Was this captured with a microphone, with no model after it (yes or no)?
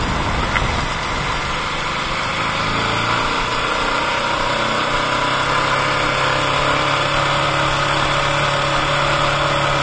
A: yes